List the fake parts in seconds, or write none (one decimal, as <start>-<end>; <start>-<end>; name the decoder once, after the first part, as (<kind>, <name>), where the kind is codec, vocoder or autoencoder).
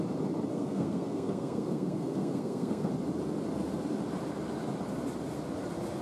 0.5-2.9 (codec, SNAC)